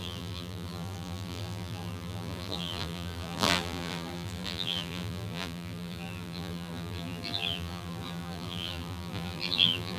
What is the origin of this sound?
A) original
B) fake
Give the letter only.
B